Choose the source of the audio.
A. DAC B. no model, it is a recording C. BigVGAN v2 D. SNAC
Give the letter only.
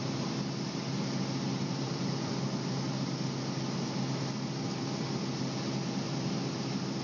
B